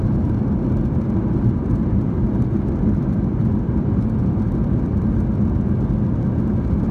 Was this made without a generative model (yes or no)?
yes